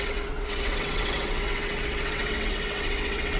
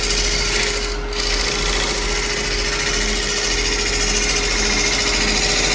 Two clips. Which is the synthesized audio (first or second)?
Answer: first